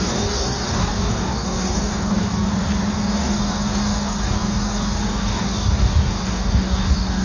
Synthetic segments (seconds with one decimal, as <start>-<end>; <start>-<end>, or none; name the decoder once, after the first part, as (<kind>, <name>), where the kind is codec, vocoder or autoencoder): 0.0-2.5 (codec, DAC); 3.0-7.2